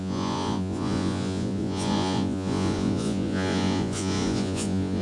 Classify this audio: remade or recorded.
remade